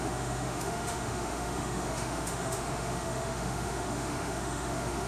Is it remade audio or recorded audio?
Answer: remade